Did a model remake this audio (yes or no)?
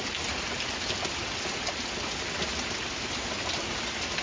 no